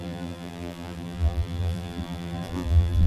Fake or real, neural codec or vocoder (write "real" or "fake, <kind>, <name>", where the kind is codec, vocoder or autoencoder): fake, vocoder, BigVGAN v2